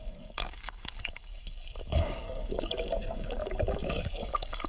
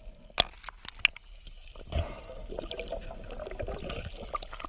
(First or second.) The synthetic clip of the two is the first